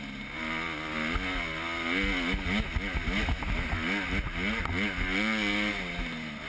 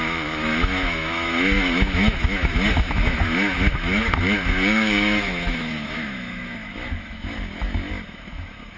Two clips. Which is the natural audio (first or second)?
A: first